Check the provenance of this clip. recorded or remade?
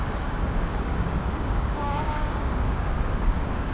remade